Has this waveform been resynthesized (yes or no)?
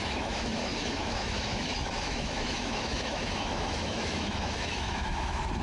yes